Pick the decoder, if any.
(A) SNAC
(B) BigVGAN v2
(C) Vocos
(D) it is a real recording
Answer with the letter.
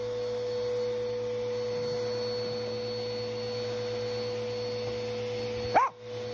D